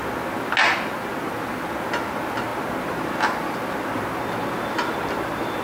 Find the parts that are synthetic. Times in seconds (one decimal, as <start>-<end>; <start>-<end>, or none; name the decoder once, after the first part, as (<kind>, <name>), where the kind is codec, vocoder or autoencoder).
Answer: none

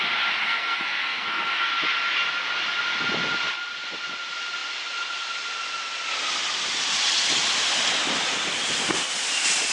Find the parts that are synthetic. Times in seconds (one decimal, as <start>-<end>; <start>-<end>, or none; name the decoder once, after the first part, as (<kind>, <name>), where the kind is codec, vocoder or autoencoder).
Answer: 0.4-1.7 (codec, SNAC)

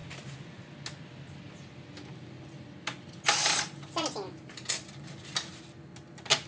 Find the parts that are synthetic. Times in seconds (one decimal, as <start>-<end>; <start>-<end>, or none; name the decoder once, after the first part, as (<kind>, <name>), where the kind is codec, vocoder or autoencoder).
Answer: none

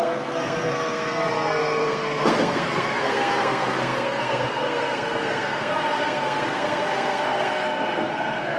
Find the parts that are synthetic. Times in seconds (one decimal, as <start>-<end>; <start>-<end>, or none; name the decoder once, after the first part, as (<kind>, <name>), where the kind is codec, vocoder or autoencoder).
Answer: 0.0-8.6 (codec, SNAC)

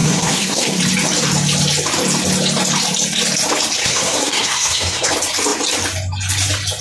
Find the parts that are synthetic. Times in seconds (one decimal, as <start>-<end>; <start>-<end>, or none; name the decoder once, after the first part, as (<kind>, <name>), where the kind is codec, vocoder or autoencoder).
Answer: 0.0-0.8 (codec, SNAC); 3.8-5.1

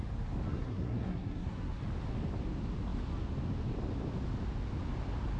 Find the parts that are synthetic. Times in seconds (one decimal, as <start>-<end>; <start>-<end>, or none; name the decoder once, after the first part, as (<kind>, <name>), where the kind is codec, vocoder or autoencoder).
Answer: 0.5-1.8 (codec, SNAC)

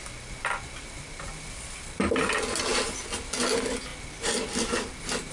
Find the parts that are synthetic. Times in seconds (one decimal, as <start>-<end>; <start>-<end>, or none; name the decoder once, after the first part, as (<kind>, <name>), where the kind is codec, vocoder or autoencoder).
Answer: none